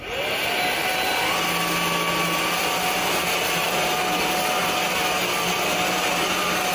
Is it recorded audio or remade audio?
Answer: recorded